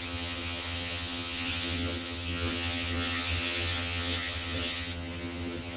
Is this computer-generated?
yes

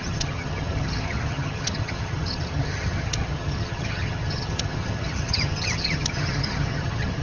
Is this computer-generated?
yes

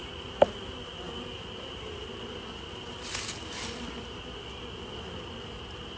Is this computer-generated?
no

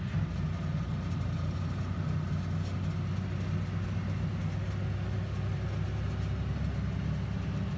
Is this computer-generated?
no